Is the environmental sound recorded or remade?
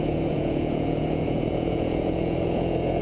remade